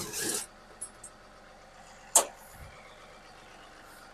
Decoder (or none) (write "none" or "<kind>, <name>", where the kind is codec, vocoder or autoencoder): none